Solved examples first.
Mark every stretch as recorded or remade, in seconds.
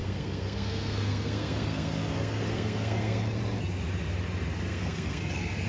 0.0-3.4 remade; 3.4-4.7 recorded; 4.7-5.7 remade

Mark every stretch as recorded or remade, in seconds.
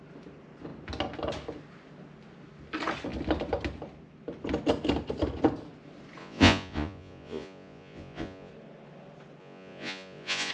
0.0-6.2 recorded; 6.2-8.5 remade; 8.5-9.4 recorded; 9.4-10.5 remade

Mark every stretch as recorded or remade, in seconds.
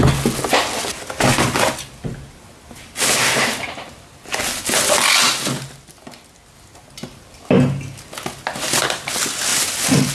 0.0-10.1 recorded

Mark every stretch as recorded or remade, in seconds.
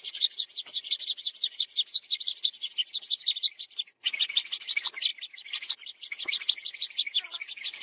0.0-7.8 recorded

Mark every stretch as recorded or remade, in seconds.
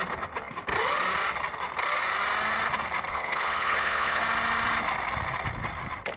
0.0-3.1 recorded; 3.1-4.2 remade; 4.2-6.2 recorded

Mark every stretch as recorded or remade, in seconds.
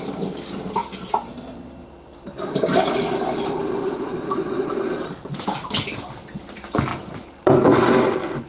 0.0-3.8 recorded; 3.8-4.9 remade; 4.9-8.5 recorded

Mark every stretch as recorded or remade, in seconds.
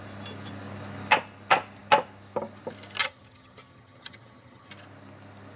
0.0-3.0 recorded; 3.0-4.7 remade; 4.7-5.6 recorded